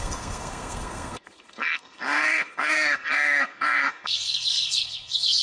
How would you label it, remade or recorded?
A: remade